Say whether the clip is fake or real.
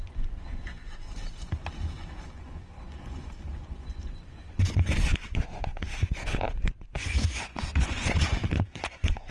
fake